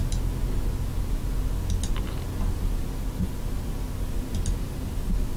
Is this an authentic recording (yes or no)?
yes